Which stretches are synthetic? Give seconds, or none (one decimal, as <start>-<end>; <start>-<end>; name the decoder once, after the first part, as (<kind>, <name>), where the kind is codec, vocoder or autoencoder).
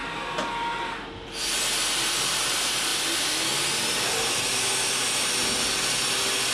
none